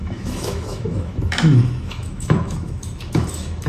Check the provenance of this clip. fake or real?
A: fake